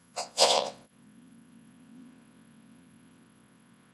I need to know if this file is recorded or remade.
remade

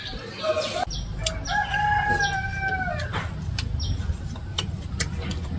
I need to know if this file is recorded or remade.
recorded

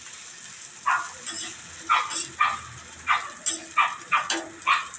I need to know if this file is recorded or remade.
recorded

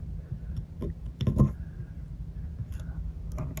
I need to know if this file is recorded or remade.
recorded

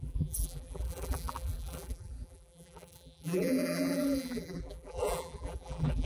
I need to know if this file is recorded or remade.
remade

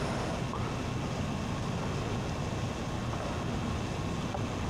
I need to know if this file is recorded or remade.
recorded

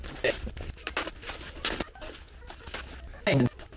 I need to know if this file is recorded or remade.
recorded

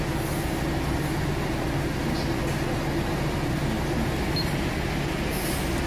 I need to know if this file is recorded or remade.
recorded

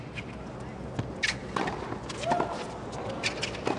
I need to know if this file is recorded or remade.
recorded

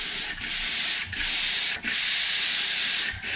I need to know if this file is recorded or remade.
recorded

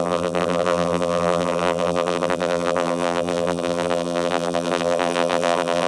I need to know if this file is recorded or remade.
remade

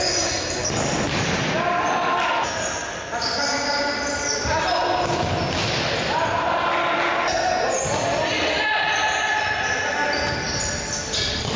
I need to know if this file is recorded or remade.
recorded